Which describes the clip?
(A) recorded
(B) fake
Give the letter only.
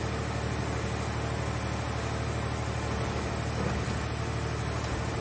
A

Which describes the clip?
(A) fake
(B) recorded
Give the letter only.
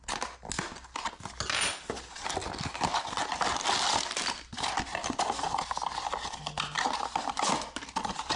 B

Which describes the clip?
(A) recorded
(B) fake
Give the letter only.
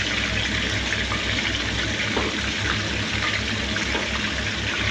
A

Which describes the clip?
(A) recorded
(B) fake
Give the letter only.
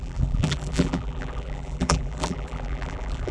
B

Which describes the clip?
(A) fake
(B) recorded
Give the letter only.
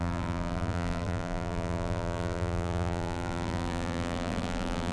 A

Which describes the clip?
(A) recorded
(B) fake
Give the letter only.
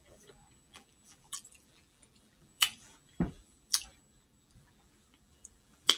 B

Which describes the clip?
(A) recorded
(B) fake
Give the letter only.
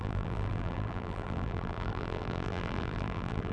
B